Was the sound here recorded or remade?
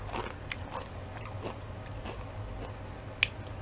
recorded